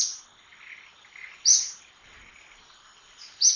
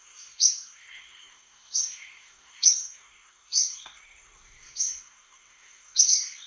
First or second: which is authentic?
first